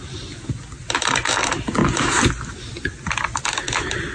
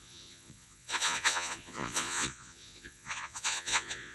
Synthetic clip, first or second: second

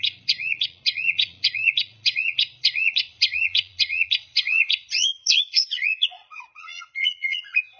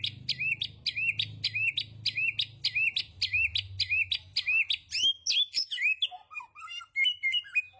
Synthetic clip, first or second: first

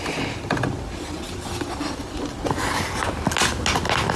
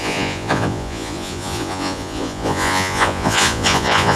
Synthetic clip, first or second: second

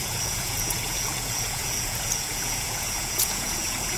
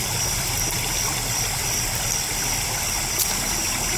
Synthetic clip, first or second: first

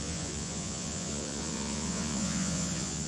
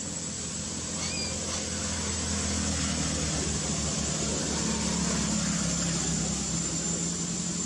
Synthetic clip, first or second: first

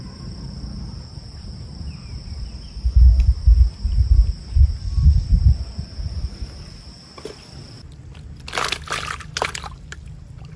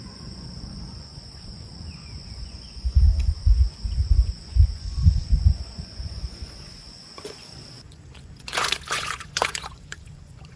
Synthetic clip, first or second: second